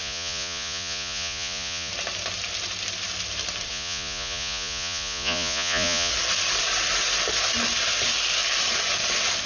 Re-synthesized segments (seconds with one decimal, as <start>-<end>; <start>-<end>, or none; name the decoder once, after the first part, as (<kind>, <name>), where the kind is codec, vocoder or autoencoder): 0.0-1.9 (vocoder, Vocos); 3.7-6.1